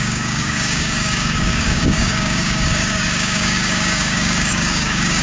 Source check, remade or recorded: remade